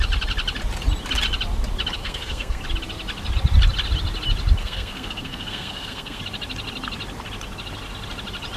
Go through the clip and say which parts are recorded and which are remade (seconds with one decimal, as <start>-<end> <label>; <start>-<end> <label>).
0.0-2.0 recorded; 2.0-2.6 remade; 2.6-4.6 recorded; 4.6-6.2 remade; 6.2-8.6 recorded